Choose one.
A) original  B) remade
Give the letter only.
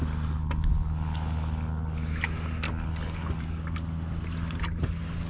A